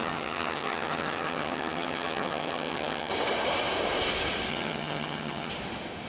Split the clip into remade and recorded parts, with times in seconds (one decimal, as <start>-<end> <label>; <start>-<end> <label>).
0.0-3.1 remade; 3.1-4.5 recorded; 4.5-5.5 remade; 5.5-6.1 recorded